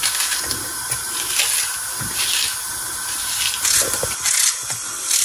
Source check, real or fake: real